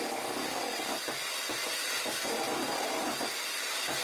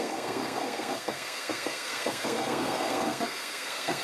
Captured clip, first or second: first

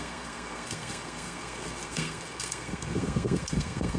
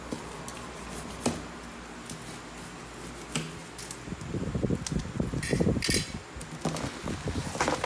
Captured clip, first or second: second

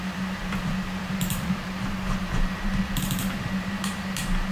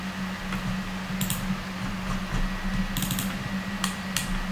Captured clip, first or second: second